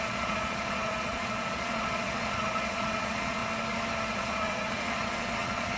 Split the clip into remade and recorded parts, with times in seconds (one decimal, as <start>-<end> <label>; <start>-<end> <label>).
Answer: 0.0-3.4 remade; 3.4-4.1 recorded; 4.1-5.8 remade